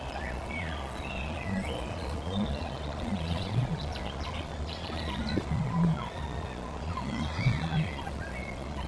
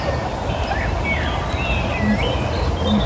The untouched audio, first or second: second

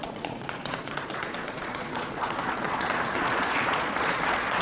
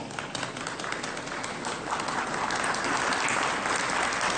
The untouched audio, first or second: second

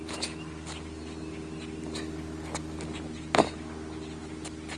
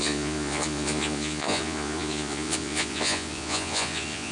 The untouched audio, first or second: first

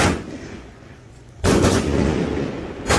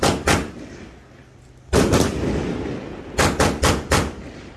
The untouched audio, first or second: second